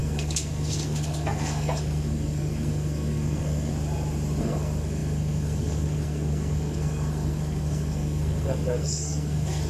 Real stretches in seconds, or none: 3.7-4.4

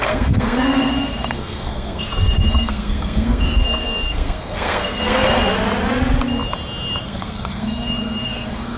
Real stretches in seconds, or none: 5.2-7.0

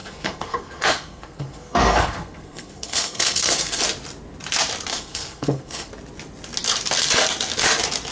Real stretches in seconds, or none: 3.8-4.9; 5.9-8.1

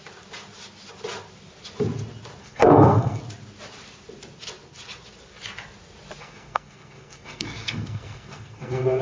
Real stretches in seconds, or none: 0.0-2.4; 3.2-6.2

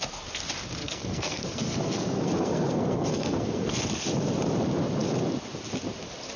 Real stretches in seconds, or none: 0.0-0.8; 3.9-6.4

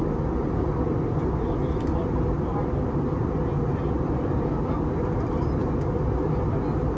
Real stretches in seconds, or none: 0.0-7.0

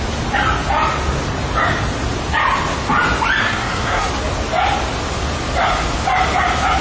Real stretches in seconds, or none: 0.0-3.4; 4.1-6.8